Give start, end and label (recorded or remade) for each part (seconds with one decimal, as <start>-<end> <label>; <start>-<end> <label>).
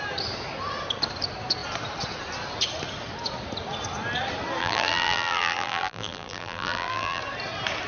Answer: 0.0-4.6 recorded; 4.6-7.2 remade; 7.2-7.9 recorded